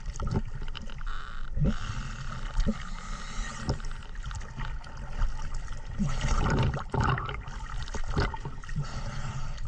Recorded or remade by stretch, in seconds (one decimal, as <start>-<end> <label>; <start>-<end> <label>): 0.0-9.7 recorded